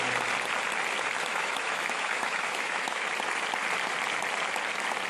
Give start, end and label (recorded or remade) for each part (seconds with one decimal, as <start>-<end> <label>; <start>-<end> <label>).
0.0-1.3 recorded; 1.3-3.1 remade; 3.1-5.1 recorded